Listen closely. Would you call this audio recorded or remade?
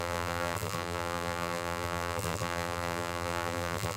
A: remade